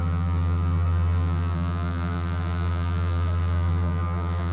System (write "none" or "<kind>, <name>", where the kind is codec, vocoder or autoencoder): vocoder, BigVGAN v2